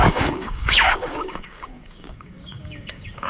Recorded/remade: remade